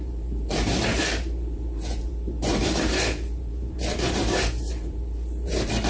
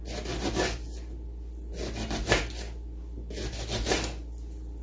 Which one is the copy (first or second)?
first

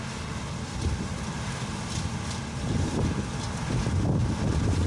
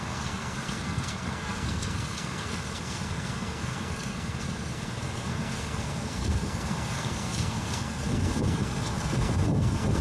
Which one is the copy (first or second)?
second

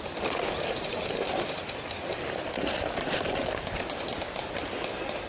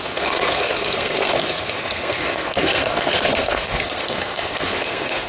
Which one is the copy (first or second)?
second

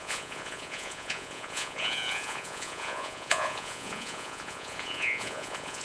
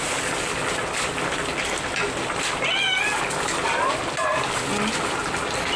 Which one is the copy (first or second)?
first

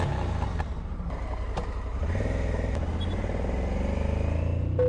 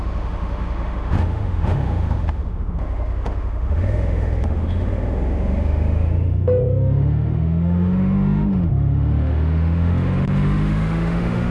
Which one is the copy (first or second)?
second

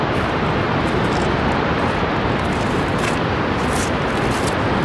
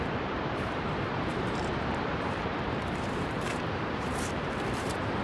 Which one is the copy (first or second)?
second